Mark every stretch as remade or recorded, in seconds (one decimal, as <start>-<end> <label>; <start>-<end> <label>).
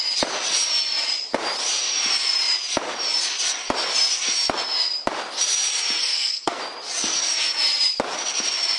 0.0-6.0 recorded; 6.0-6.6 remade; 6.6-8.8 recorded